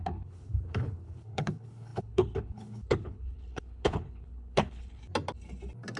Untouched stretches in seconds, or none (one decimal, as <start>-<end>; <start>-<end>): 5.0-6.0